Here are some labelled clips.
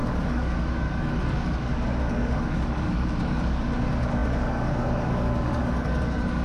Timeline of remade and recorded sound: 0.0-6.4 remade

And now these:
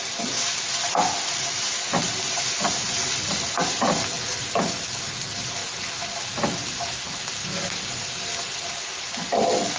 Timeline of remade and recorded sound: 0.0-9.8 recorded

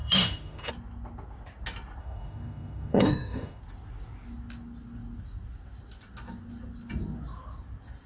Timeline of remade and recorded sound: 0.0-0.7 remade; 0.7-2.0 recorded; 2.0-3.6 remade; 3.6-8.1 recorded

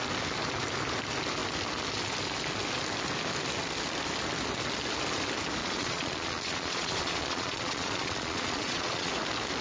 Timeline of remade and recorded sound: 0.0-5.6 recorded; 5.6-9.1 remade; 9.1-9.6 recorded

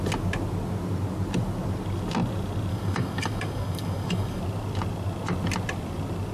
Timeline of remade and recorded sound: 0.0-2.7 recorded; 2.7-4.4 remade; 4.4-6.3 recorded

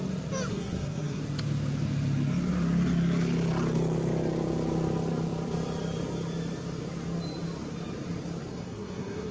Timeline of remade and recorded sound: 0.0-0.5 recorded; 0.5-1.2 remade; 1.2-8.5 recorded; 8.5-9.3 remade